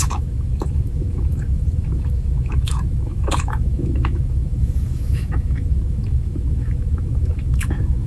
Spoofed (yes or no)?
yes